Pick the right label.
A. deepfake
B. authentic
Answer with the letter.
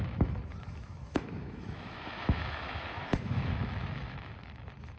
A